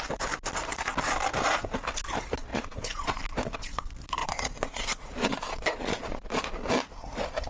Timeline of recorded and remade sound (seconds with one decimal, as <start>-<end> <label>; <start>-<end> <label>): 0.0-2.5 recorded; 2.5-3.2 remade; 3.2-4.2 recorded; 4.2-6.4 remade; 6.4-7.5 recorded